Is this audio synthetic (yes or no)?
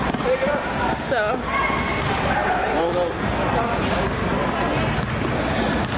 no